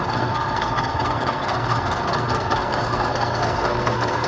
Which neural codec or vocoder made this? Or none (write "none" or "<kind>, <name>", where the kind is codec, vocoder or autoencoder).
codec, SNAC